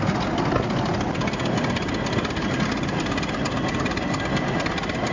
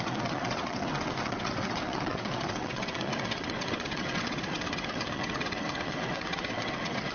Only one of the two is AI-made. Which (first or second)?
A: second